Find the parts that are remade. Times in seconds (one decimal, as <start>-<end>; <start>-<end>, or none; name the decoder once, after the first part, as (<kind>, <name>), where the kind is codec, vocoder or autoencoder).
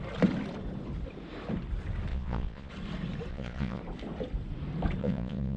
2.1-2.7 (vocoder, Vocos); 3.3-3.8; 5.0-5.6